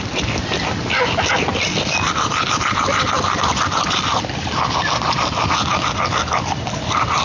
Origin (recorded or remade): recorded